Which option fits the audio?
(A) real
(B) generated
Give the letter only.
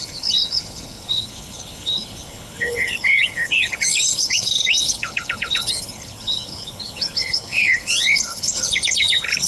B